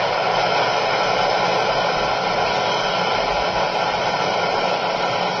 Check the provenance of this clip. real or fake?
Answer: real